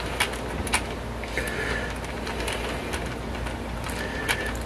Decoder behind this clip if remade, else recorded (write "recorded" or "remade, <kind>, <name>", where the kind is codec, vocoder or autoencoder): recorded